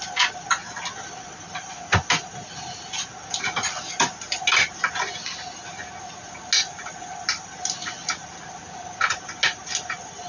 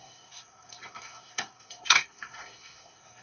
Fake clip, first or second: second